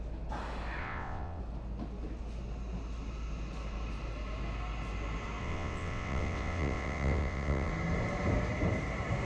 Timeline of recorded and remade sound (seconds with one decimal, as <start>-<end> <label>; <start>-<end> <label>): 0.0-0.8 recorded; 0.8-1.4 remade; 1.4-5.4 recorded; 5.4-7.7 remade; 7.7-9.3 recorded